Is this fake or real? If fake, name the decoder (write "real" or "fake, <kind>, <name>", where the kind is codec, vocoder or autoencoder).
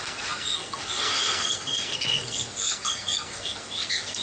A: fake, codec, SNAC